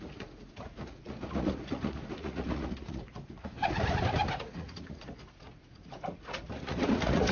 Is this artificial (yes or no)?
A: yes